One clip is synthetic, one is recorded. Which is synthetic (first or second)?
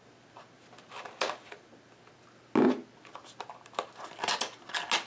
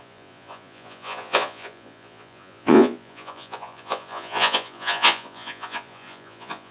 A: second